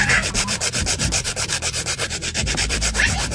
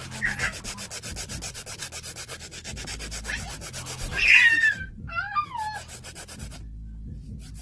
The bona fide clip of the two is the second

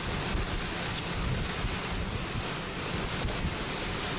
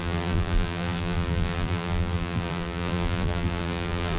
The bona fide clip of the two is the first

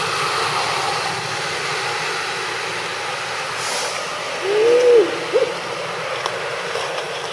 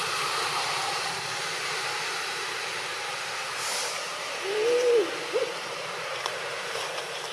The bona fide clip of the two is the first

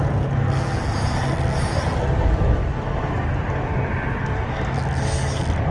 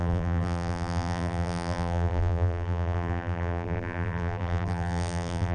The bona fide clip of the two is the first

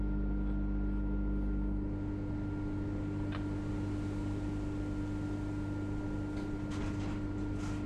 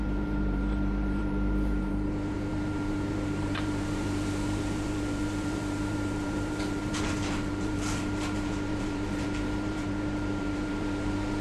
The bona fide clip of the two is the first